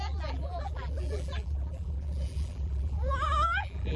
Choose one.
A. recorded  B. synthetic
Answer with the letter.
B